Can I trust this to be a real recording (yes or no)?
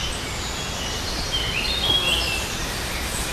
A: yes